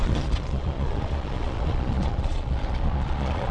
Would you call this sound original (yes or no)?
no